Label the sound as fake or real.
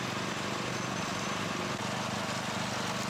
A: real